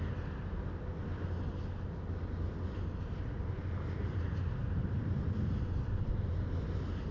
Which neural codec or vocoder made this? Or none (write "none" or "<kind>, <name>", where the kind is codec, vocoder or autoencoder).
none